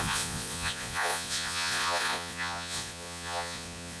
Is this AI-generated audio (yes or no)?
yes